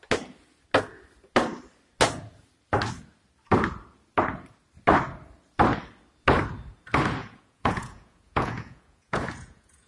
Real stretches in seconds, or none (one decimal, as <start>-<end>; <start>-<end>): 0.0-7.2